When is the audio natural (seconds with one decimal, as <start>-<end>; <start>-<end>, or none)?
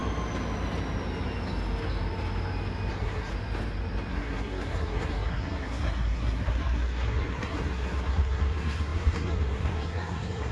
0.0-2.9; 3.3-4.1